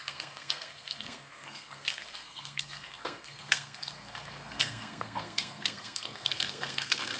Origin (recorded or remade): remade